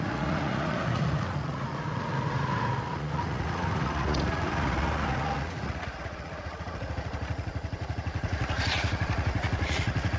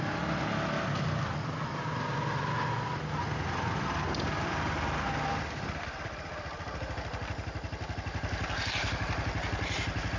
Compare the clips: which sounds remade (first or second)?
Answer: first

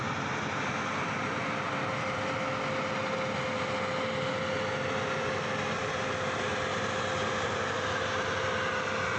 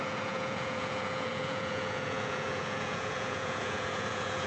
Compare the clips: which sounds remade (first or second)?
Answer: second